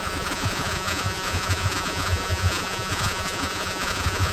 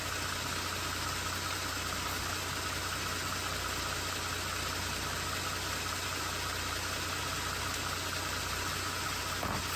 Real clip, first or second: second